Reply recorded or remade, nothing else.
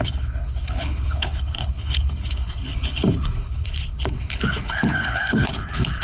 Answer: remade